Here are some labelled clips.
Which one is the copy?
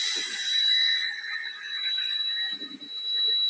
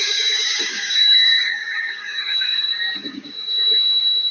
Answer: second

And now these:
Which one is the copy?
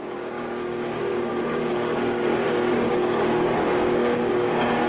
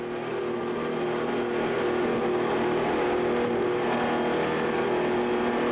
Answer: first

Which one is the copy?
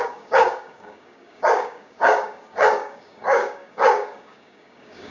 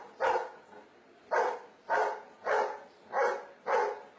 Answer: first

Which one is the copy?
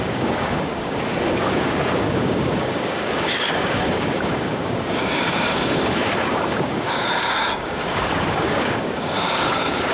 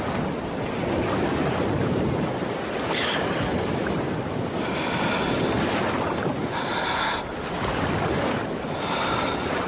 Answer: first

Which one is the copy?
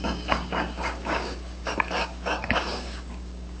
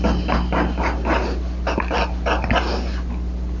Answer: first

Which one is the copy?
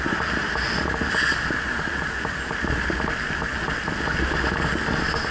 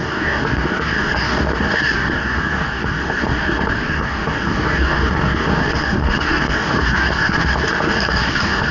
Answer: second